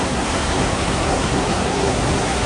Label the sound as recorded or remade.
remade